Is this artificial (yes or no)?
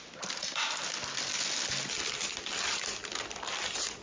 no